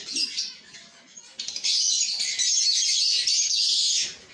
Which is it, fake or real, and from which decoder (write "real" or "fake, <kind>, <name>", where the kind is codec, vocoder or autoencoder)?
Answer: real